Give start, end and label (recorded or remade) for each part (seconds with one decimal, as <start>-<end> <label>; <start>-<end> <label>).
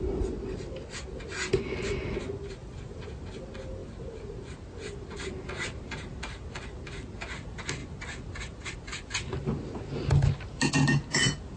0.0-2.6 recorded; 2.6-3.1 remade; 3.1-11.6 recorded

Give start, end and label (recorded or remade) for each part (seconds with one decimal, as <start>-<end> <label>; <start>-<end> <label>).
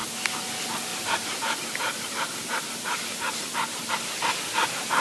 0.0-0.9 recorded; 0.9-3.9 remade; 3.9-5.0 recorded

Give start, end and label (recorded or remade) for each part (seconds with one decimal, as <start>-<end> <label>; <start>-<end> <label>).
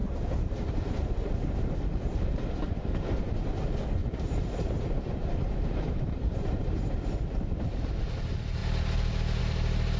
0.0-1.3 remade; 1.3-4.0 recorded; 4.0-7.4 remade; 7.4-10.0 recorded